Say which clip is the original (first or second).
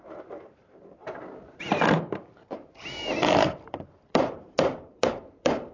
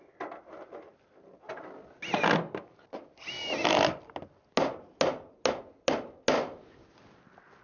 second